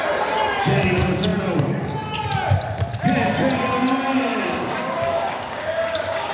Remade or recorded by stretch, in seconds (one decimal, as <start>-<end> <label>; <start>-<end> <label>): 0.0-4.3 recorded; 4.3-6.3 remade